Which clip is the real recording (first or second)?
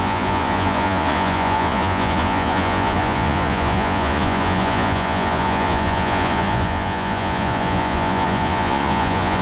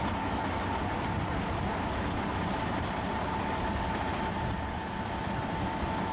second